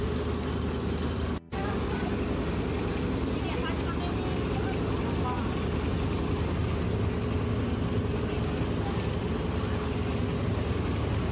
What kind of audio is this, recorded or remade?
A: recorded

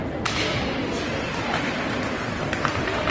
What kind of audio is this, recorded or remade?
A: recorded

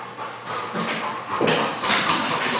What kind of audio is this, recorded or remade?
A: recorded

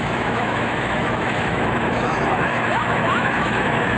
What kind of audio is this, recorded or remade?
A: remade